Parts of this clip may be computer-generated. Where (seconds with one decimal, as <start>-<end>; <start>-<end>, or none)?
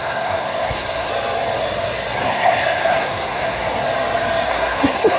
0.0-1.1; 2.2-3.6; 4.5-5.2